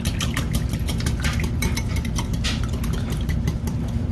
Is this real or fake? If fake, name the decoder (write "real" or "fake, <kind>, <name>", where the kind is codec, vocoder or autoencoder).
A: real